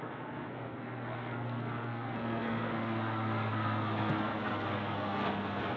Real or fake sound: fake